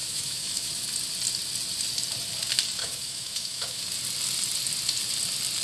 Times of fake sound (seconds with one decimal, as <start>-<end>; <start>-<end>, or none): 0.0-0.8; 2.8-3.8